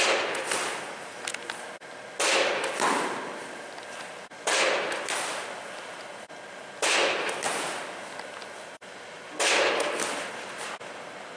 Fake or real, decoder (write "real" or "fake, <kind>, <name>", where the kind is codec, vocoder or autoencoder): real